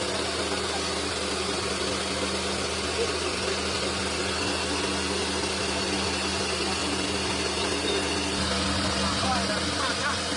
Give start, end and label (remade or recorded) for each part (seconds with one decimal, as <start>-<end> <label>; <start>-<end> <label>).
0.0-10.4 recorded